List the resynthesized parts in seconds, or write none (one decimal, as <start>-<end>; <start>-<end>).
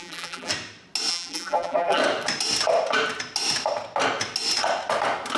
0.0-0.5; 1.1-2.0